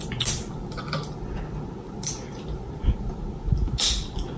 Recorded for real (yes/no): yes